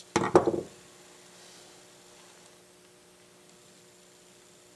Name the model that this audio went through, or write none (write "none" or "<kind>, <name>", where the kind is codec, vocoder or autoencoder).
none